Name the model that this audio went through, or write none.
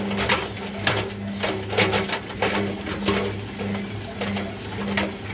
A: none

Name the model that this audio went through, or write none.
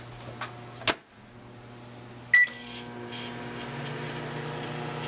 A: none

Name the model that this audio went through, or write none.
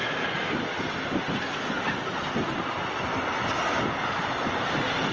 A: none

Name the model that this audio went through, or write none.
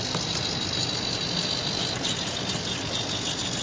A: none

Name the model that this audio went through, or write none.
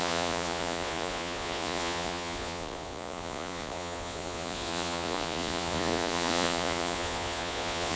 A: vocoder, Vocos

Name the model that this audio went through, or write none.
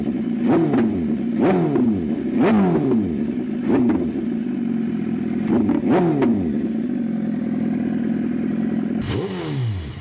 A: none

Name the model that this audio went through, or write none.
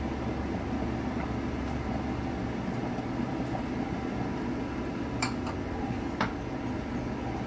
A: none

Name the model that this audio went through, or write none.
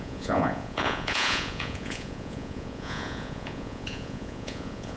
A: vocoder, Vocos